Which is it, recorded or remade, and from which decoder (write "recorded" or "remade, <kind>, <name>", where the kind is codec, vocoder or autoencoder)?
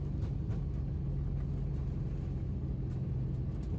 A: recorded